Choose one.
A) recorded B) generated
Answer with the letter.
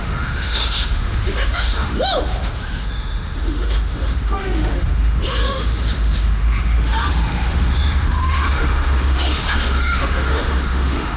B